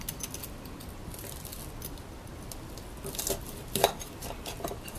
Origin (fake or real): real